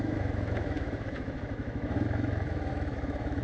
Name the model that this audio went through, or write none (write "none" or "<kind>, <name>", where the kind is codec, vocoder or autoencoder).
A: autoencoder, DAC-VAE